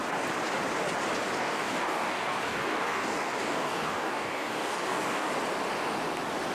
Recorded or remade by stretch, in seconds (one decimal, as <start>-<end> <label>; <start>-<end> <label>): 0.0-1.4 recorded; 1.4-5.3 remade; 5.3-6.5 recorded